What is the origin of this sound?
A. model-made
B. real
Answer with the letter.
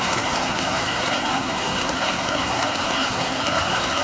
A